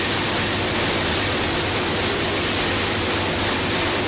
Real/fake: real